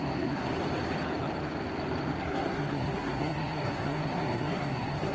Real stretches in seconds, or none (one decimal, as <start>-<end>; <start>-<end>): 0.5-2.2